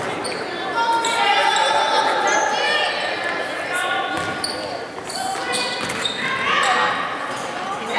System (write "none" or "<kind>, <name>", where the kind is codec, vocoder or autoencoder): none